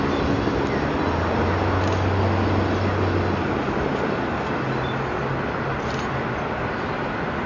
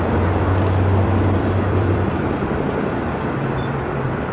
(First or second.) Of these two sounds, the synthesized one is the second